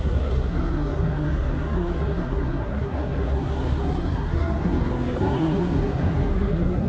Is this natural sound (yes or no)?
no